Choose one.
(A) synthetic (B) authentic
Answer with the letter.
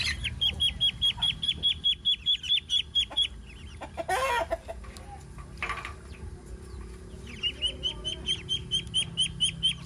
B